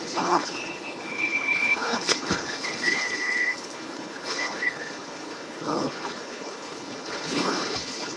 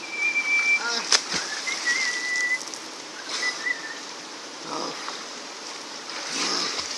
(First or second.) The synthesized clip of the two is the first